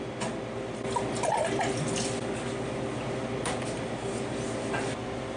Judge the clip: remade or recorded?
recorded